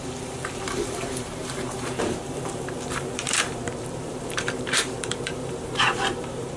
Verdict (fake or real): fake